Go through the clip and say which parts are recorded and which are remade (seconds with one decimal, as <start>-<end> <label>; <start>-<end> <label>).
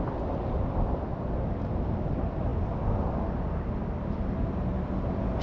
0.0-5.4 recorded